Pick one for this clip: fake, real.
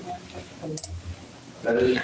real